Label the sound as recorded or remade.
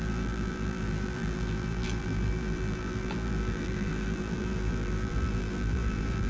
remade